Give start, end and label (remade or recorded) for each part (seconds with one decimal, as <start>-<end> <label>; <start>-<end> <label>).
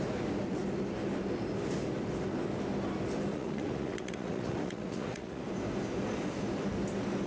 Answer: 0.0-3.3 recorded; 3.3-5.4 remade; 5.4-7.3 recorded